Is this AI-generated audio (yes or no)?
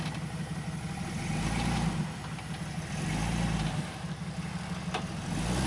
no